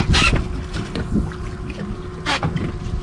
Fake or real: real